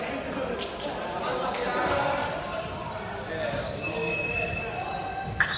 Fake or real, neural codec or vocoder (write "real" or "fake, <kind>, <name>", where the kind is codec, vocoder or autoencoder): real